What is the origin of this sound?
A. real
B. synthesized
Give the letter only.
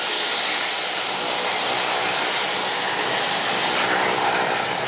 A